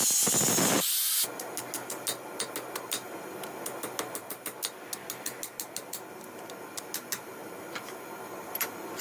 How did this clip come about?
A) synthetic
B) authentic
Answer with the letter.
B